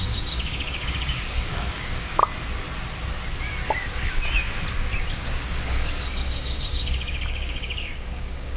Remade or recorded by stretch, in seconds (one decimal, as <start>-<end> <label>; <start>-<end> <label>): 0.0-2.2 remade; 2.2-5.1 recorded; 5.1-8.6 remade